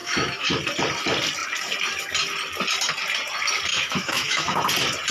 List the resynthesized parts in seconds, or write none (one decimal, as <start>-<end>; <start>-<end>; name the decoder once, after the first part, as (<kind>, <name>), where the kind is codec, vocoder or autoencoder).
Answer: 0.0-0.6 (autoencoder, DAC-VAE); 3.7-4.6